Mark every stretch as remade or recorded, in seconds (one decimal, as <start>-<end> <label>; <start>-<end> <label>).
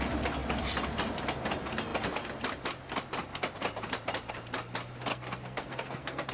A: 0.0-5.1 recorded; 5.1-6.3 remade